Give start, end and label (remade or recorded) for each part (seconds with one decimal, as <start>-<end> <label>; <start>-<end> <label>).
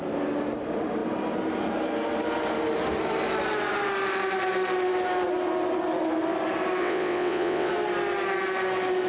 0.0-6.8 recorded; 6.8-7.7 remade; 7.7-9.1 recorded